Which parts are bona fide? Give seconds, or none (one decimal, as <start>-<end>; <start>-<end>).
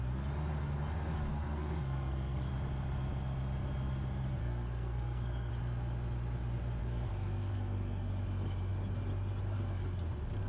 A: 0.0-1.3; 2.5-4.4; 5.5-6.8; 8.1-10.5